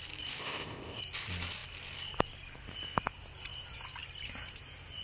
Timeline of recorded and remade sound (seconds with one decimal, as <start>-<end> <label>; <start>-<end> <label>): 0.0-0.4 recorded; 0.4-1.0 remade; 1.0-5.0 recorded